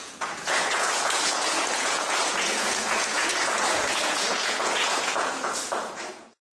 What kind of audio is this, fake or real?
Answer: fake